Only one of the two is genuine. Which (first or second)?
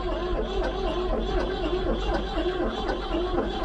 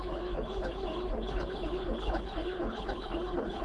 first